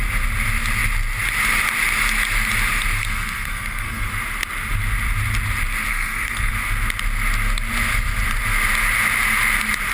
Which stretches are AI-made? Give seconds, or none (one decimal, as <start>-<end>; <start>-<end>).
3.0-4.1; 5.9-6.5